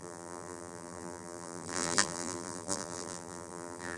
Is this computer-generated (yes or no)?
yes